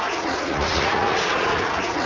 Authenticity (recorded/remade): remade